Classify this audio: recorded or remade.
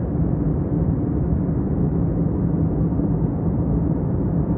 recorded